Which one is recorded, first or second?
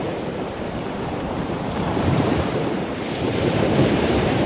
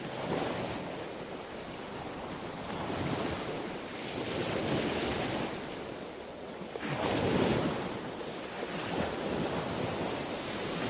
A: second